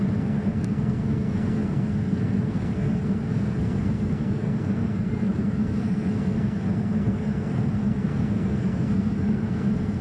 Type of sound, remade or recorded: remade